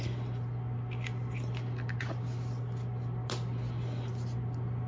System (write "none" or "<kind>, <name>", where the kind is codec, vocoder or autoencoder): none